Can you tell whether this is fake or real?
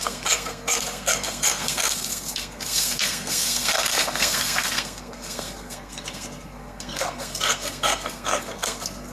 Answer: fake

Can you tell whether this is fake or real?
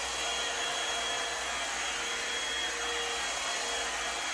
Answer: real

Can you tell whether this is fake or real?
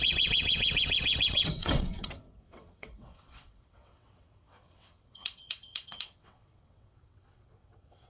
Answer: fake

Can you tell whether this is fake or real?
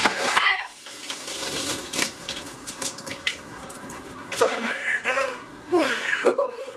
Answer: fake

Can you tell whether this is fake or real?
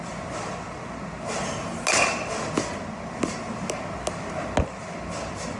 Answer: real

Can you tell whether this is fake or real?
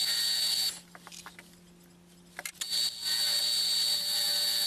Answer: real